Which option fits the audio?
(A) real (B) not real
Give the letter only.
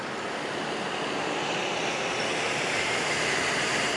A